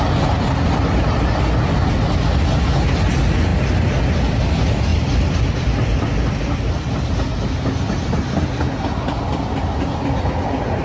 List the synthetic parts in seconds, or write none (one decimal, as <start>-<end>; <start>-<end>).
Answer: 3.5-4.5; 4.9-6.9